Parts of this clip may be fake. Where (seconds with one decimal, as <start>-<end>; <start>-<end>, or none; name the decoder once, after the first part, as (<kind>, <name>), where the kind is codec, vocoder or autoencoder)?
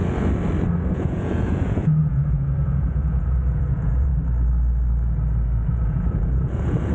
0.9-4.1 (vocoder, Vocos); 5.7-6.9